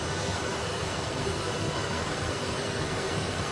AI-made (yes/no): yes